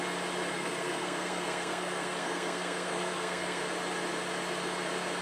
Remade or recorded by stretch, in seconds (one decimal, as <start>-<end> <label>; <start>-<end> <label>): 0.0-0.5 recorded; 0.5-3.6 remade; 3.6-5.2 recorded

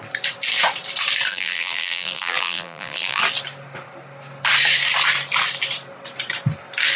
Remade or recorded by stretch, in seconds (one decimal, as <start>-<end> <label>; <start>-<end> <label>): 0.0-1.3 recorded; 1.3-3.2 remade; 3.2-7.0 recorded

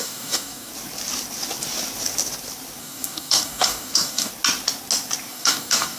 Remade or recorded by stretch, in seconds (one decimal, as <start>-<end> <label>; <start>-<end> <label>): 0.0-0.7 remade; 0.7-2.8 recorded; 2.8-4.3 remade; 4.3-5.3 recorded; 5.3-6.0 remade

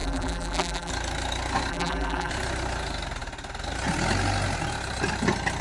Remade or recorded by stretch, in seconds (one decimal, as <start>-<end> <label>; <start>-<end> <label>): 0.0-0.9 remade; 0.9-1.7 recorded; 1.7-2.3 remade; 2.3-5.6 recorded

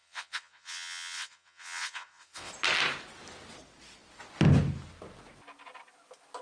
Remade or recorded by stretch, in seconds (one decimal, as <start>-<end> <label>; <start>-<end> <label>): 0.0-2.5 remade; 2.5-6.4 recorded

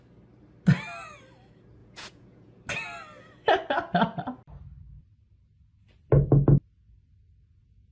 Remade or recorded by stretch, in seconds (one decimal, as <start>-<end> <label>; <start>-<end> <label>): 0.0-1.8 recorded; 1.8-2.6 remade; 2.6-7.9 recorded

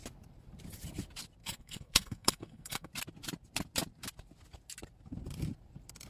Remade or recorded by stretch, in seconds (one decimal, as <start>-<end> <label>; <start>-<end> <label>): 0.0-1.4 recorded; 1.4-2.9 remade; 2.9-6.1 recorded